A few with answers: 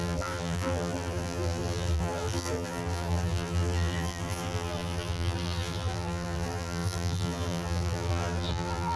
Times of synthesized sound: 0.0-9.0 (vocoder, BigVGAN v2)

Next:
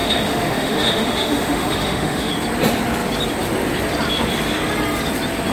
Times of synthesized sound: 0.0-2.3 (autoencoder, DAC-VAE)